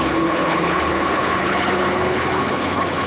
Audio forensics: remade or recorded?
remade